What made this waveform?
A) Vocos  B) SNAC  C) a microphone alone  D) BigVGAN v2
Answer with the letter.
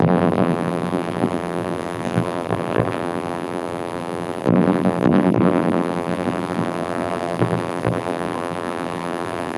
D